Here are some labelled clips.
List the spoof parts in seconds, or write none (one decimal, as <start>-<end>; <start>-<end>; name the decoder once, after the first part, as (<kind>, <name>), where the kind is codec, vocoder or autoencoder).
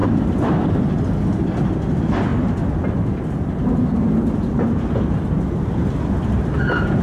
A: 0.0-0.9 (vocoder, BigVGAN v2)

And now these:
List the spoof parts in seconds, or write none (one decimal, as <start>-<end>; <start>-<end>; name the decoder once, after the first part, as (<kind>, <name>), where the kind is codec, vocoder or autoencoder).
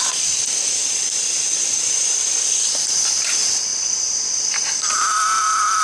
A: 0.0-0.8 (vocoder, BigVGAN v2); 2.7-3.7; 4.4-5.8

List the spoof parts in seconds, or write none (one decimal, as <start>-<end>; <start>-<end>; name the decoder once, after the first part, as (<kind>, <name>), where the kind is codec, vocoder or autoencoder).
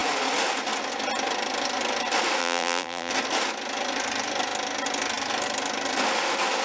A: 2.4-3.1 (vocoder, BigVGAN v2)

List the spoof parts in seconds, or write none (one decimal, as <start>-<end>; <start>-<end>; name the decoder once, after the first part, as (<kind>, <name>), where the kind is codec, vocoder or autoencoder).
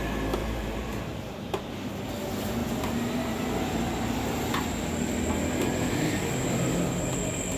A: 0.4-1.6 (vocoder, BigVGAN v2)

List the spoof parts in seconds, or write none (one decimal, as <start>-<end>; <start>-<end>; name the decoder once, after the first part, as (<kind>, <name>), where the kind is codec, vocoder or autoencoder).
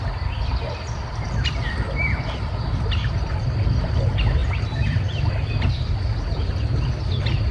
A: 4.4-5.7 (vocoder, BigVGAN v2)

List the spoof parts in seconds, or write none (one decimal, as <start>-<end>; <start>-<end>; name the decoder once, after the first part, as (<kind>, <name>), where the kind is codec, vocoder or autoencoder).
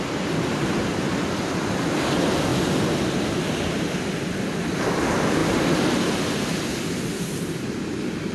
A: none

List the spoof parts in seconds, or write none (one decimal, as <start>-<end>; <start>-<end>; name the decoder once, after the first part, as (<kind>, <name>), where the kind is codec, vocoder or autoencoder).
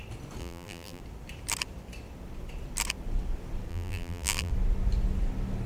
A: 0.4-1.0 (vocoder, BigVGAN v2); 3.7-4.5